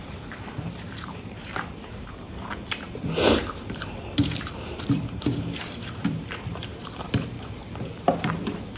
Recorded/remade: remade